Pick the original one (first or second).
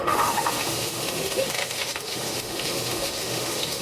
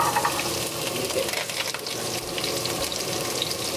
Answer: second